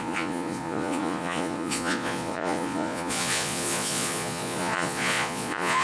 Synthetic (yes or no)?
yes